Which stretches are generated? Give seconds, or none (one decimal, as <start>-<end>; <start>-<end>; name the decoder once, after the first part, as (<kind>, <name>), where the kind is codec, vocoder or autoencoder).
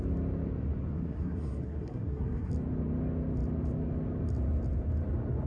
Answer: 0.9-2.5 (codec, SNAC)